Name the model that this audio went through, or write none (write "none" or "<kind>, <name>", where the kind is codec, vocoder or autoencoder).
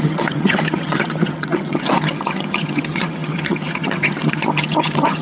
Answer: vocoder, HiFi-GAN